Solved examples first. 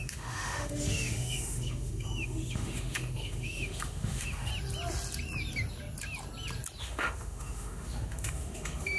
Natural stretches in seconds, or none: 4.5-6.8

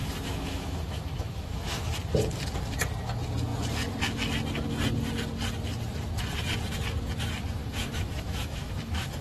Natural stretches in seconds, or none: 1.8-7.6